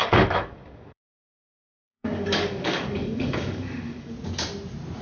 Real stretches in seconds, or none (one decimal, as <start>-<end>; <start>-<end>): 1.1-1.7; 4.1-5.0